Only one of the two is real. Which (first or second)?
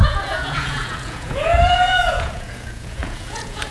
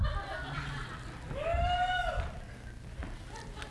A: second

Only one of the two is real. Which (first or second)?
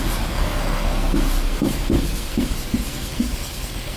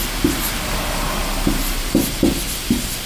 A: second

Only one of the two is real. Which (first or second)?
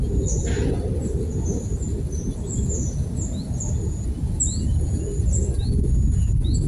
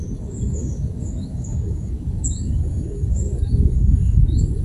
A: first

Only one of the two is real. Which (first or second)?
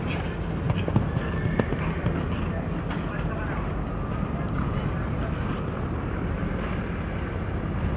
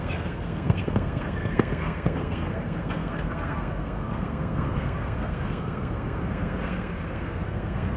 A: first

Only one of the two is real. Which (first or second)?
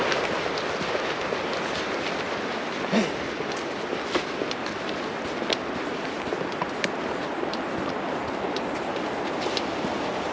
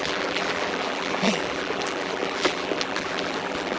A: first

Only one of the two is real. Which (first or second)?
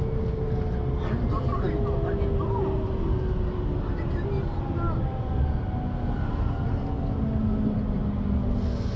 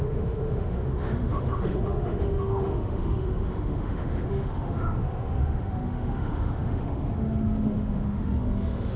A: first